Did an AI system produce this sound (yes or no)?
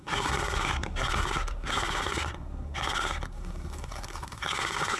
yes